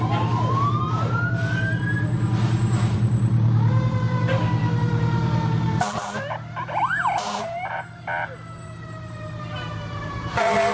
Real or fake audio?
fake